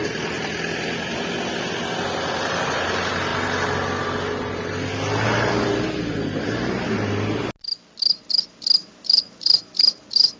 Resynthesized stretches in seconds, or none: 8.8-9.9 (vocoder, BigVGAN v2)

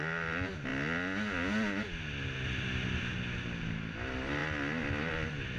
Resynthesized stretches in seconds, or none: none